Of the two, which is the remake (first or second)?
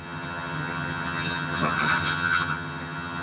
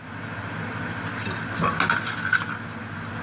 first